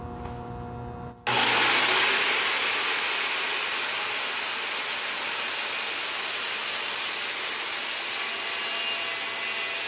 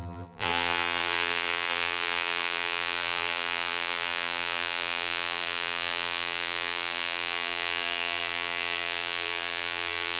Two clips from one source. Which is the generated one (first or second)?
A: second